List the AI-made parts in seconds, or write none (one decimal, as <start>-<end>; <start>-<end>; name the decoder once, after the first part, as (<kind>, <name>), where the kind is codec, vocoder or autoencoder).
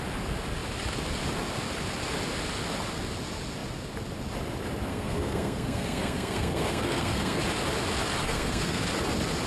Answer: 4.9-7.4 (codec, SNAC); 8.2-8.8